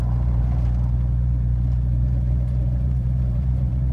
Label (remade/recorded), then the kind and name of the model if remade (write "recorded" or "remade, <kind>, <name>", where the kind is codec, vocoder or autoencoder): remade, vocoder, BigVGAN v2